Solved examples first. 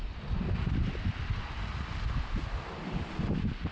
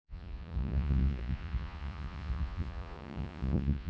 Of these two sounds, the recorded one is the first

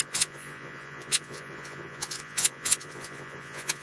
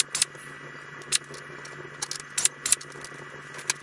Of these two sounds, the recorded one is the second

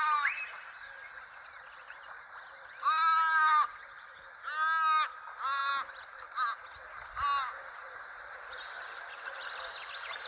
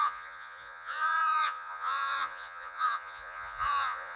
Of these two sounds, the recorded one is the first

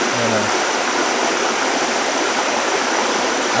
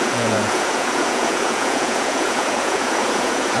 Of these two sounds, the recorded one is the first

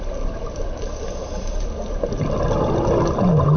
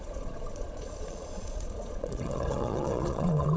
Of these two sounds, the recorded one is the first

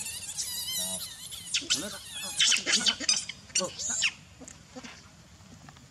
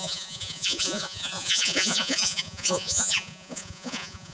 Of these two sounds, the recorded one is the first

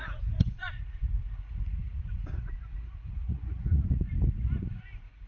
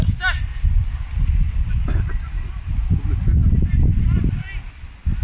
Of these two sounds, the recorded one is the second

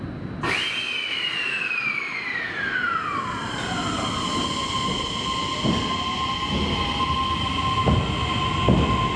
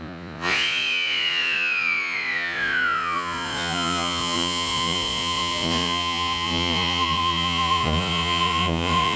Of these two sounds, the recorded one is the first